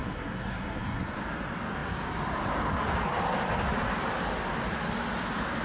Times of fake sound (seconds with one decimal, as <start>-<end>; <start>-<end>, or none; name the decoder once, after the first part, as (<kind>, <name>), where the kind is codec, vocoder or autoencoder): 0.0-1.2 (codec, SNAC)